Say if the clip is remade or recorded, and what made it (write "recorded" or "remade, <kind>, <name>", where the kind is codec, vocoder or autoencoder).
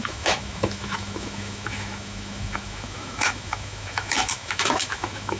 remade, autoencoder, DAC-VAE